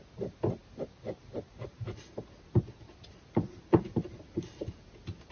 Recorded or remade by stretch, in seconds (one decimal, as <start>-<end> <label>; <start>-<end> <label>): 0.0-5.3 recorded